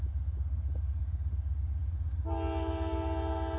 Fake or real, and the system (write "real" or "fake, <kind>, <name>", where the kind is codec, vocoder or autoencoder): real